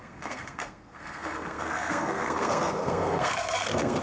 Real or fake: fake